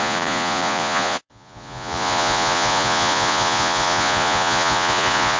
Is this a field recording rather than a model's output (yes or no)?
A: no